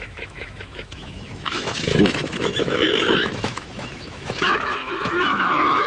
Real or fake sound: fake